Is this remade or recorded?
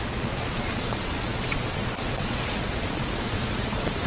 remade